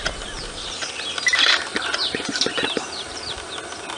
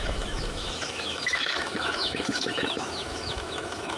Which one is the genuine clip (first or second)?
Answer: first